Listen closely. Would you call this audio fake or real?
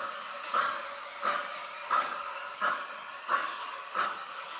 fake